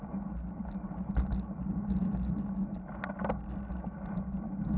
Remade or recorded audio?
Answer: recorded